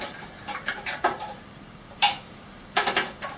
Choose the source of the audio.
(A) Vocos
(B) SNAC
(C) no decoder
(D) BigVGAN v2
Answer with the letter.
D